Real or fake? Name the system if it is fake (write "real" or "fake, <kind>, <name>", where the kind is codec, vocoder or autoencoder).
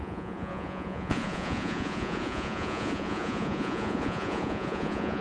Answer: fake, vocoder, Vocos